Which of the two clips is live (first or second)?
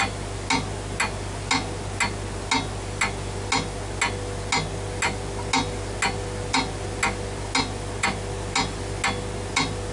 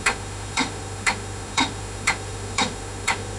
first